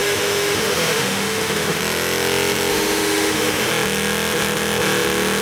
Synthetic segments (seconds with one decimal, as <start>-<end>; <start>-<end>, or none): 0.0-1.8; 2.7-3.7